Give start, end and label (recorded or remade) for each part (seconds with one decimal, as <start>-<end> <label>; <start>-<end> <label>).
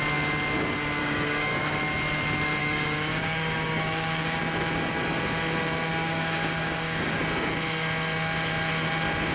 0.0-1.0 recorded; 1.0-1.8 remade; 1.8-2.6 recorded; 2.6-4.4 remade; 4.4-5.9 recorded; 5.9-7.2 remade; 7.2-9.3 recorded